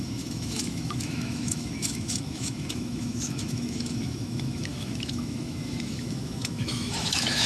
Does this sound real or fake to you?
fake